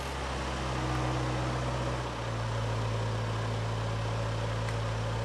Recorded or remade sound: recorded